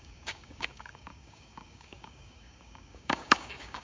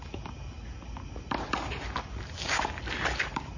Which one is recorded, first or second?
second